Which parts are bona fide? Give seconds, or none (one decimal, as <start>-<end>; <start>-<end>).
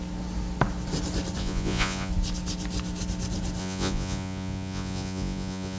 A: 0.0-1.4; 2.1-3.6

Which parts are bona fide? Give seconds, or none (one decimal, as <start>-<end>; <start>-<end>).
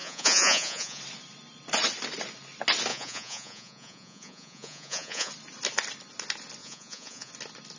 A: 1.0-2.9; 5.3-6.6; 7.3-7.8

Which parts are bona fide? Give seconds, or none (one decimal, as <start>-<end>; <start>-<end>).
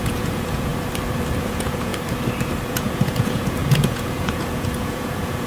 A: 0.7-1.4; 1.9-2.7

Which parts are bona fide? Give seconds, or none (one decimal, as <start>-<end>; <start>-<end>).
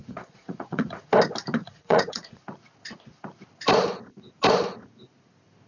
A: 1.0-1.6; 2.4-5.7